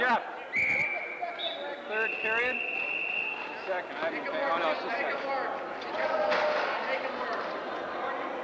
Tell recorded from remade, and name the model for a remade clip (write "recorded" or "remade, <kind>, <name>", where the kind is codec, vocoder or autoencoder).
recorded